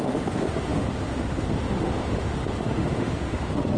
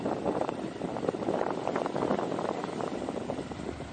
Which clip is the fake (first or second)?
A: first